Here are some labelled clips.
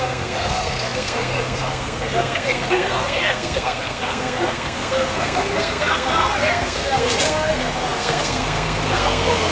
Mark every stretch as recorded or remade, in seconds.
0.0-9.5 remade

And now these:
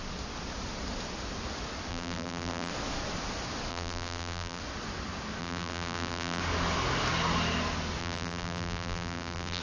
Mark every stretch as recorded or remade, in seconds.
0.0-1.9 recorded; 1.9-2.7 remade; 2.7-3.7 recorded; 3.7-4.6 remade; 4.6-5.4 recorded; 5.4-6.4 remade; 6.4-8.0 recorded; 8.0-9.6 remade

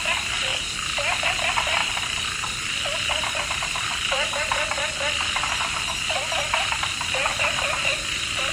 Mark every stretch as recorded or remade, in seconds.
0.0-1.8 recorded; 1.8-6.8 remade; 6.8-7.3 recorded; 7.3-8.5 remade

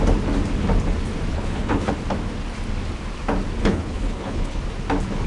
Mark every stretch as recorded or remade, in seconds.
0.0-1.3 recorded; 1.3-1.9 remade; 1.9-3.6 recorded; 3.6-4.6 remade; 4.6-5.3 recorded

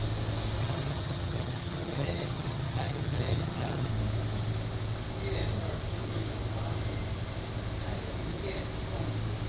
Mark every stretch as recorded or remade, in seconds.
0.0-0.6 recorded; 0.6-3.9 remade; 3.9-9.5 recorded